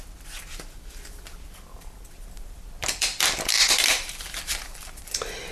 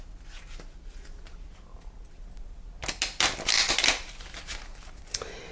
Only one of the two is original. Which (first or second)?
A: second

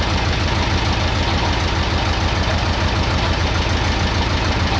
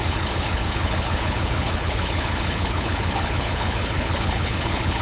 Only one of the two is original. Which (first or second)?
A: first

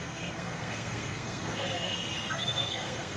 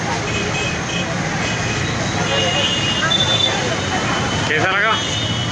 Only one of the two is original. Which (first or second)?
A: second